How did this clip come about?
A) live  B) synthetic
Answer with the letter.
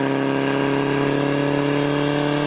A